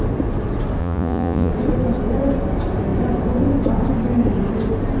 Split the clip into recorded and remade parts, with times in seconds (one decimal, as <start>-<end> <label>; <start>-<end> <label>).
0.0-0.8 recorded; 0.8-1.5 remade; 1.5-5.0 recorded